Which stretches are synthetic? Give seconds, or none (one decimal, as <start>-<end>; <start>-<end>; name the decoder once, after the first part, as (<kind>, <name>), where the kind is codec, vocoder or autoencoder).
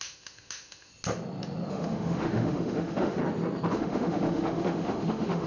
0.0-0.9 (autoencoder, DAC-VAE); 1.7-3.2; 3.7-5.5